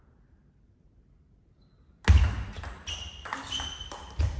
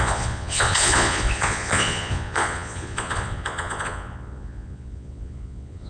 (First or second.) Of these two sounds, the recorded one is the first